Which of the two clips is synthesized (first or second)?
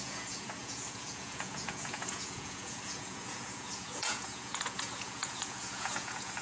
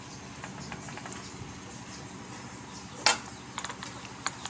first